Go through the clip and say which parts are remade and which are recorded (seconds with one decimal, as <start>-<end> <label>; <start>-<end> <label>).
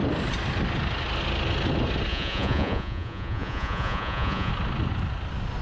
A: 0.0-2.1 recorded; 2.1-4.5 remade; 4.5-5.6 recorded